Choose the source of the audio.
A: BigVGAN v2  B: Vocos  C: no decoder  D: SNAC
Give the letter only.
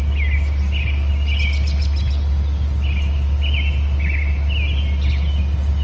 C